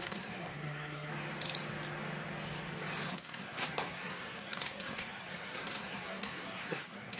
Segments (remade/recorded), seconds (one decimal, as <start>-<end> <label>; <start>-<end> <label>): 0.0-1.1 remade; 1.1-3.1 recorded; 3.1-7.2 remade